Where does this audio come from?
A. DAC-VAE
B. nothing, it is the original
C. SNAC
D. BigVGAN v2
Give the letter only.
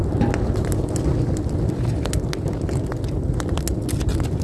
B